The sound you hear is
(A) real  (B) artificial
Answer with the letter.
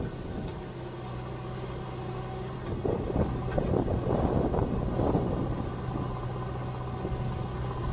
A